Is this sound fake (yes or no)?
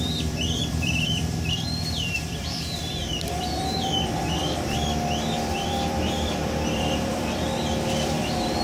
yes